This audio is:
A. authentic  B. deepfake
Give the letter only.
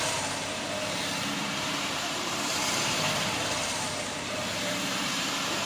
B